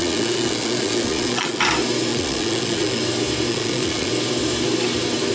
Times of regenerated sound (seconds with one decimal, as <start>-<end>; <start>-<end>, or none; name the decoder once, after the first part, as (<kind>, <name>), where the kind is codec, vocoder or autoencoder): 0.0-1.6 (vocoder, Vocos); 2.1-3.0; 3.5-4.1

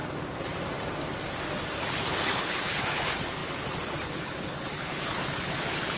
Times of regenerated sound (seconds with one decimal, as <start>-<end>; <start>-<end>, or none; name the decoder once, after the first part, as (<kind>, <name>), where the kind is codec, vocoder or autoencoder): 1.8-6.0 (codec, HILCodec)

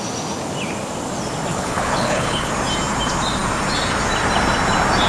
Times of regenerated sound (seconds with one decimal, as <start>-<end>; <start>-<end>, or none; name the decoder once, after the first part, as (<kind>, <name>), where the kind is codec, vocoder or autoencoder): 1.5-2.5 (codec, HILCodec)

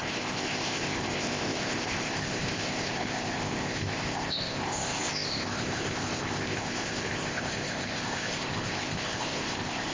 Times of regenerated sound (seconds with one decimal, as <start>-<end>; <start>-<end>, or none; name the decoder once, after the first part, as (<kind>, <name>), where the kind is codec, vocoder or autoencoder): 0.0-9.9 (codec, ZipCodec)

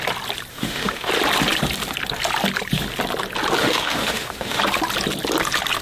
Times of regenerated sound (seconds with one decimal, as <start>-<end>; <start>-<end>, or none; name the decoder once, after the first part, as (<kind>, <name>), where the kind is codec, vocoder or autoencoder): 0.5-1.1 (autoencoder, DAC-VAE); 3.6-4.6